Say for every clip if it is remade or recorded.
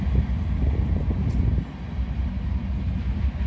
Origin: recorded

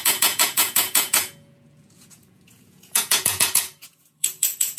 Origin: remade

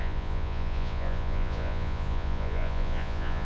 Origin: remade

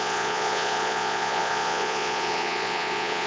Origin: remade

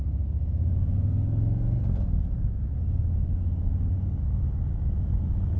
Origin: recorded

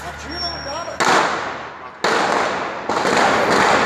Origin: recorded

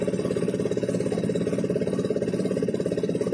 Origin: recorded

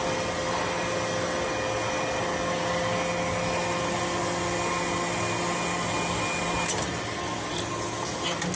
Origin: recorded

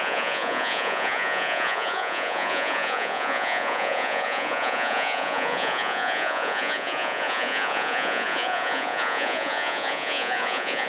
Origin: remade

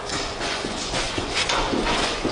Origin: remade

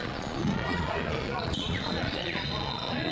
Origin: remade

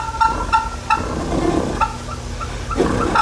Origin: recorded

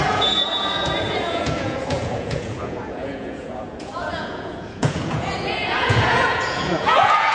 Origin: remade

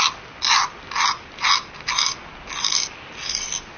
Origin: recorded